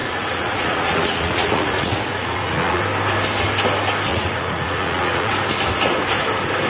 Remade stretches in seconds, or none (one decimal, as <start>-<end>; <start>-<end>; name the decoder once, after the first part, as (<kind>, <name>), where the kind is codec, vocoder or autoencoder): 0.0-2.8 (vocoder, Vocos); 4.1-5.3